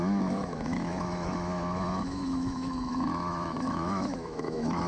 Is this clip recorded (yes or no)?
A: no